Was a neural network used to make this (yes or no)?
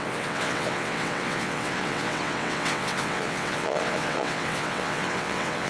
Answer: yes